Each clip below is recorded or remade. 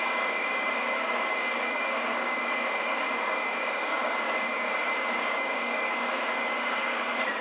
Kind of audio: remade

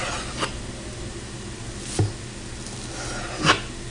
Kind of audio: recorded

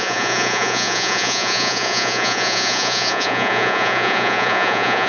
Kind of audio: remade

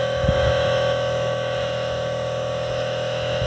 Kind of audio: remade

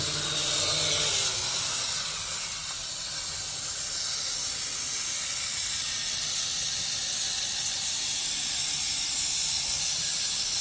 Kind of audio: recorded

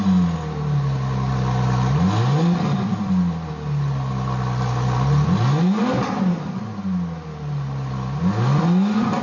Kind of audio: recorded